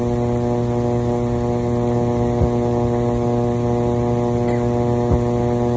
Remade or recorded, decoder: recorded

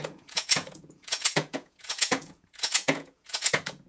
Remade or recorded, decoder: remade, vocoder, Vocos